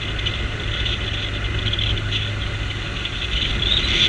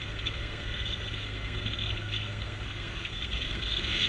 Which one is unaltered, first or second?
first